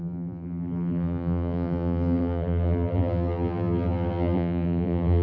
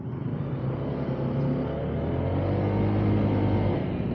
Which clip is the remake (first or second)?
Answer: first